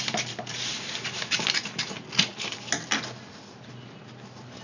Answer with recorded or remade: recorded